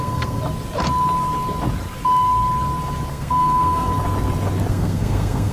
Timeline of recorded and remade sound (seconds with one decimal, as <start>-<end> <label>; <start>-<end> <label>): 0.0-0.4 remade; 0.4-3.1 recorded; 3.1-3.9 remade; 3.9-4.7 recorded; 4.7-5.5 remade